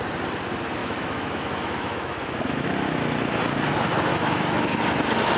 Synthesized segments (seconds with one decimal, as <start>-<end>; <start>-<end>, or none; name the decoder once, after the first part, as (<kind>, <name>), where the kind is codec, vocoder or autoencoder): 0.8-3.0 (autoencoder, DAC-VAE); 4.1-4.8

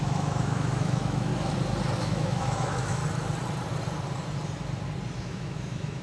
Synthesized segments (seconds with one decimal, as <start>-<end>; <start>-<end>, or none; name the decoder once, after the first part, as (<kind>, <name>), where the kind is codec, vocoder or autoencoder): 0.0-1.3 (autoencoder, DAC-VAE); 2.0-3.0; 5.2-6.0

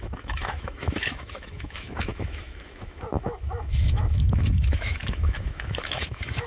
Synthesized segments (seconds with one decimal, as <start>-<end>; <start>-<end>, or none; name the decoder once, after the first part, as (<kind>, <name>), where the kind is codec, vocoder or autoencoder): 0.0-6.5 (autoencoder, DAC-VAE)

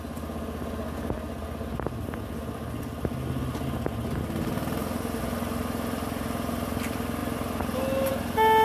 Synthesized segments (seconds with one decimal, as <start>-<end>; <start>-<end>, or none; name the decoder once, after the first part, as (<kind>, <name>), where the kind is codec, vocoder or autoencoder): none

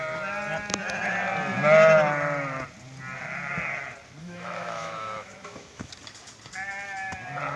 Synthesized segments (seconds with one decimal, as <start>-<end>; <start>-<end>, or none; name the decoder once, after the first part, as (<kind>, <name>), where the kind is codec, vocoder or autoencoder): 4.2-5.9 (autoencoder, DAC-VAE)

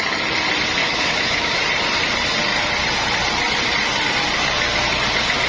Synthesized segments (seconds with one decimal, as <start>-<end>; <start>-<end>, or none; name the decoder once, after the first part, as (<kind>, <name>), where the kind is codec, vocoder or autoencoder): 0.8-1.6 (autoencoder, DAC-VAE)

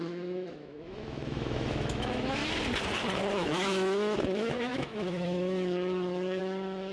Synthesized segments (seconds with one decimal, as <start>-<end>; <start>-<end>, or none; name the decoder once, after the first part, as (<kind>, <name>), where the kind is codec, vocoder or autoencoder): 0.0-2.4 (autoencoder, DAC-VAE); 3.3-6.9

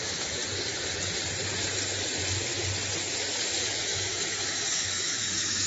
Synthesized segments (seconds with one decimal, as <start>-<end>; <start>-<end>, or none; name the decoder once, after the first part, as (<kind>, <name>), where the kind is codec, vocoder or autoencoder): 0.0-0.4 (autoencoder, DAC-VAE); 3.8-5.7